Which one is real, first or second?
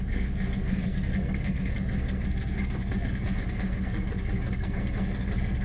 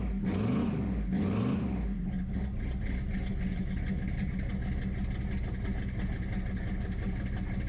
second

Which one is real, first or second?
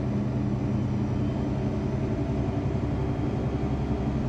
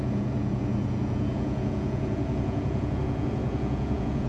first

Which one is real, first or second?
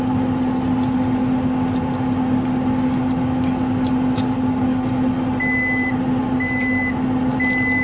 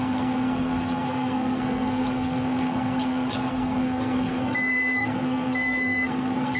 first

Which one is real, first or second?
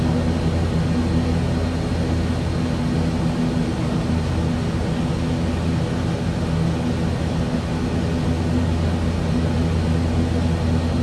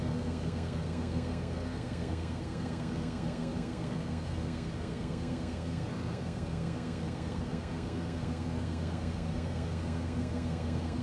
first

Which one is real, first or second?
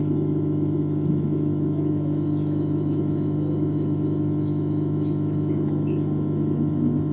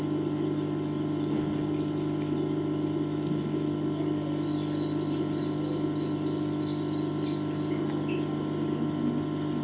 second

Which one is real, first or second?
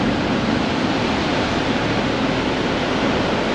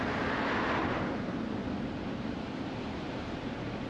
first